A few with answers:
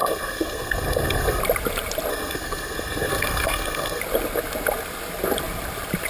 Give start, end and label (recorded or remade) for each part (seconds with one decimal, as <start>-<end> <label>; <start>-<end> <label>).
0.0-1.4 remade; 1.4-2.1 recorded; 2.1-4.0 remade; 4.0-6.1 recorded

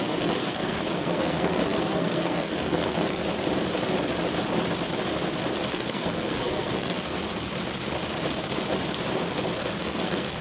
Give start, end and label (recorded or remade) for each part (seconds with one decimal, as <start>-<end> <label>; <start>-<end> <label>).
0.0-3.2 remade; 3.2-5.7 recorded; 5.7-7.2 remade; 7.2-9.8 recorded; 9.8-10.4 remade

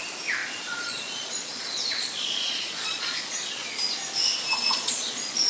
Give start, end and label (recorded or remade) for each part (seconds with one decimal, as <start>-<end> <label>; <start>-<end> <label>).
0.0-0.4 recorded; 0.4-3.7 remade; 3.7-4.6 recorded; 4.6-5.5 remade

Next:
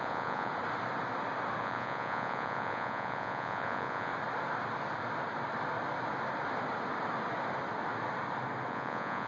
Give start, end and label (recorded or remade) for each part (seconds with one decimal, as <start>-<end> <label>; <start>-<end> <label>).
0.0-0.5 remade; 0.5-1.6 recorded; 1.6-4.1 remade; 4.1-8.7 recorded; 8.7-9.3 remade

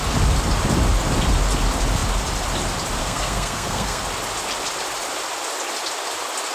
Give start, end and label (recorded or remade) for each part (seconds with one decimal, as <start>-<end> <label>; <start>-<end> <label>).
0.0-3.0 recorded; 3.0-4.0 remade; 4.0-6.5 recorded